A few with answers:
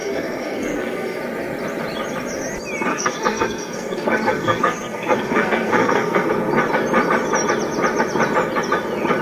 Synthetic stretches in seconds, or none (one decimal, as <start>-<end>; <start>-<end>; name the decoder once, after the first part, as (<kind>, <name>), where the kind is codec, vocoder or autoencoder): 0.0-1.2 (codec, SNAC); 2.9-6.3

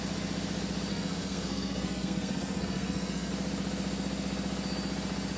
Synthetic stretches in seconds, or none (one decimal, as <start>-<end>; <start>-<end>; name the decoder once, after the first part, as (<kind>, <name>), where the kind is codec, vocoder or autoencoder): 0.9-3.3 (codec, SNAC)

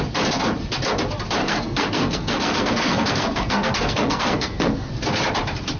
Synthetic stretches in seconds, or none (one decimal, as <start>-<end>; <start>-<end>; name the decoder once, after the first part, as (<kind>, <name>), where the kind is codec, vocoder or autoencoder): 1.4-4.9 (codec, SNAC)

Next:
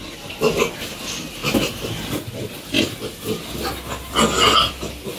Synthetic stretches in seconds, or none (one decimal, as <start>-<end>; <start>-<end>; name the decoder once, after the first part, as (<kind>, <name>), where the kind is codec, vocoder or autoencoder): none

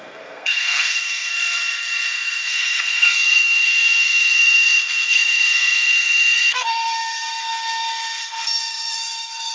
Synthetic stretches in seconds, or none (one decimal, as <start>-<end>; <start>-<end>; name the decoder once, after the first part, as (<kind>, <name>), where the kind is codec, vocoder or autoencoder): 0.0-9.5 (codec, SNAC)

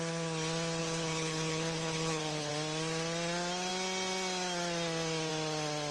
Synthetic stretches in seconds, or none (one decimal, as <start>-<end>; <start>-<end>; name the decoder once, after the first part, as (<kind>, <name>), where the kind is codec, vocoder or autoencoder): 0.8-2.5 (codec, HILCodec)